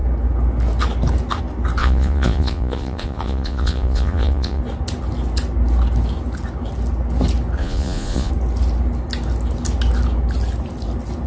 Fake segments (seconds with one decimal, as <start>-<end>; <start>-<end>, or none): 1.8-4.6; 7.6-8.3